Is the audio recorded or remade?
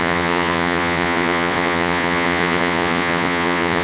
remade